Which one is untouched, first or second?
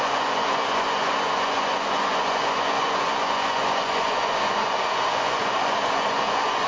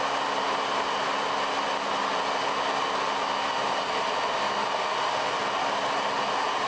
second